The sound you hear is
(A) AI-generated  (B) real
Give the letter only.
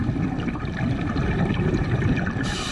B